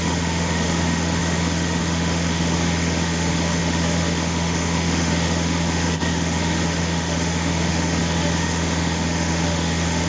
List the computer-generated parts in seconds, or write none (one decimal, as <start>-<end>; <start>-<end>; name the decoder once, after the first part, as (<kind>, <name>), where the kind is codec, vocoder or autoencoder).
0.0-10.1 (autoencoder, DAC-VAE)